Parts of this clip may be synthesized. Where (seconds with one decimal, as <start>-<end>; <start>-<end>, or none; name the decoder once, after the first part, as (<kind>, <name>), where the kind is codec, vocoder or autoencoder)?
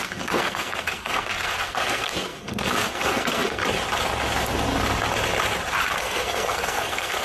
0.0-3.6 (codec, SNAC); 5.9-7.2